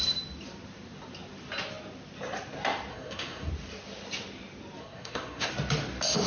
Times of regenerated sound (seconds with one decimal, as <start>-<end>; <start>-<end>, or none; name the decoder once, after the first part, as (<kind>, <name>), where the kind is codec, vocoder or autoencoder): 2.9-3.5 (codec, SNAC); 4.8-5.5

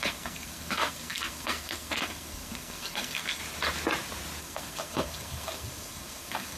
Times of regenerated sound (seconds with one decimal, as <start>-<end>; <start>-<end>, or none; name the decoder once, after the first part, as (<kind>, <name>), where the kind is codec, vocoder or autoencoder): 0.0-3.4 (codec, SNAC); 4.4-6.6

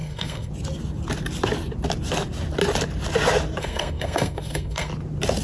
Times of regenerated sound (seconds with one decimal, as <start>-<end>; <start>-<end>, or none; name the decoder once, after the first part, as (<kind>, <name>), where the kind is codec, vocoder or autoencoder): 0.0-0.5 (codec, SNAC); 3.6-4.9

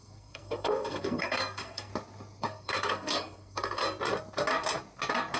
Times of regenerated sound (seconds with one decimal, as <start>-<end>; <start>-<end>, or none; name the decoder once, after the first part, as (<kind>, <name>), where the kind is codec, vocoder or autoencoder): 0.0-1.9 (codec, SNAC); 2.4-3.8

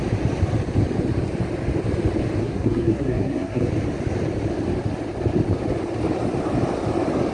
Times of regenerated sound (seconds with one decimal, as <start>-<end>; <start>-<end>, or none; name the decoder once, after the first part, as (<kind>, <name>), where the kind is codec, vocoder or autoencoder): 2.4-3.7 (codec, SNAC)